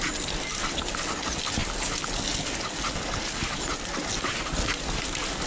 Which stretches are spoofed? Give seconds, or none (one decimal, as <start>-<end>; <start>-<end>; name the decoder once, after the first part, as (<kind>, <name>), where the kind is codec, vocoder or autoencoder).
none